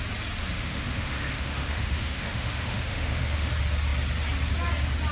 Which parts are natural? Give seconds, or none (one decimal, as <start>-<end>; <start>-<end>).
0.0-0.4; 3.5-5.1